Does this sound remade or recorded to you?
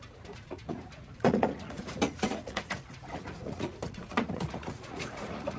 remade